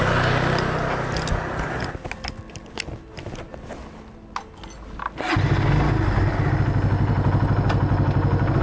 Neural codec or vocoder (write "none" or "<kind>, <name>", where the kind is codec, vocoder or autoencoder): none